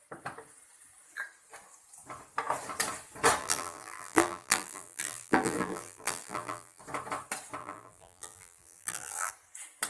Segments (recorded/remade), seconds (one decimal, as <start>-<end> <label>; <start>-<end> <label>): 0.0-3.4 recorded; 3.4-6.8 remade; 6.8-7.6 recorded; 7.6-9.3 remade; 9.3-9.9 recorded